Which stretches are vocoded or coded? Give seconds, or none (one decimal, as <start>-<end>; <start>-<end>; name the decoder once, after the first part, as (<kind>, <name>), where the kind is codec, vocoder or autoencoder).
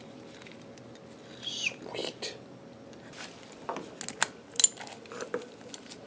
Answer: none